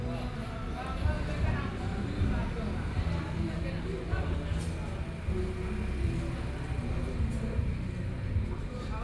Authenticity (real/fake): real